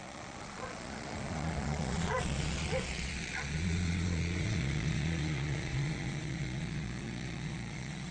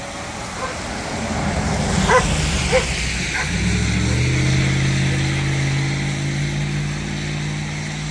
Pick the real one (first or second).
second